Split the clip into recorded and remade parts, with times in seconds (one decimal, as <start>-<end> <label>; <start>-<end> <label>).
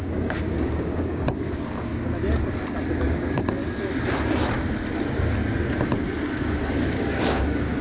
0.0-1.9 remade; 1.9-3.0 recorded; 3.0-3.6 remade; 3.6-6.3 recorded; 6.3-7.8 remade